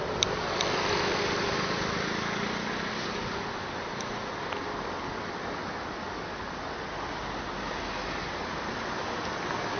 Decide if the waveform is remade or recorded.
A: recorded